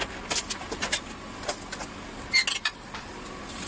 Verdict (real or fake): real